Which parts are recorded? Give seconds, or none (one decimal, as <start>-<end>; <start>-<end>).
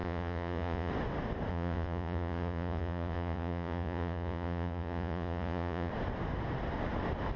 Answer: 0.9-1.5; 5.9-7.4